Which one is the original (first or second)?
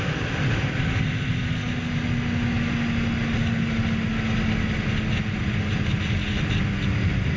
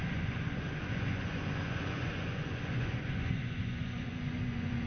first